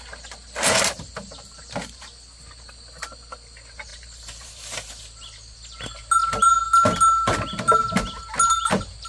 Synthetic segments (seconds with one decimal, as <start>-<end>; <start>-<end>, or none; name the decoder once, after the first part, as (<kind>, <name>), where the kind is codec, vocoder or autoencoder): 3.9-4.9 (vocoder, BigVGAN v2)